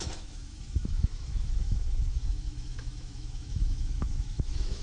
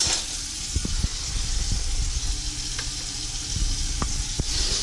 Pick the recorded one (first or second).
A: second